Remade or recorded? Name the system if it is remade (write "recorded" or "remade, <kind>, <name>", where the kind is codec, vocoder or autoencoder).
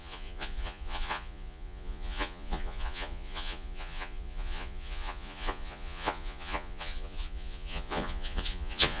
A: remade, vocoder, Vocos